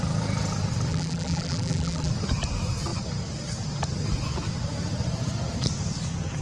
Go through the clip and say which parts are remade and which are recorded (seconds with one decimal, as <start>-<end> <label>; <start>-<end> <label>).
0.0-0.9 recorded; 0.9-2.1 remade; 2.1-6.4 recorded